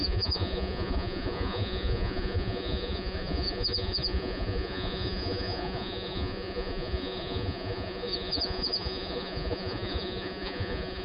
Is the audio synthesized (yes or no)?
yes